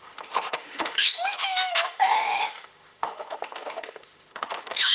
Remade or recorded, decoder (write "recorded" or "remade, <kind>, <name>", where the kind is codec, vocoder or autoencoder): remade, autoencoder, DAC-VAE